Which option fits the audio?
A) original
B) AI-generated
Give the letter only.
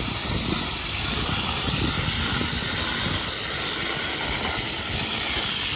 A